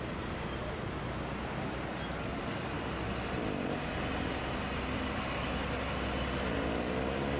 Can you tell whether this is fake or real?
real